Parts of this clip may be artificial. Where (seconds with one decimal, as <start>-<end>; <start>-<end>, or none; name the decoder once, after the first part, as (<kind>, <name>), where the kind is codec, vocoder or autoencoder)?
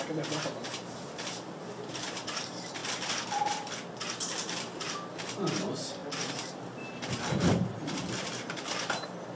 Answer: 0.0-2.8 (vocoder, BigVGAN v2); 3.5-9.4